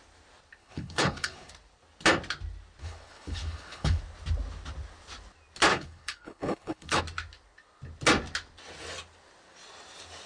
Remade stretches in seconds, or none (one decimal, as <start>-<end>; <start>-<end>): 0.6-1.5; 2.8-4.0; 5.7-7.0